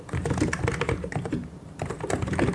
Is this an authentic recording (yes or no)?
yes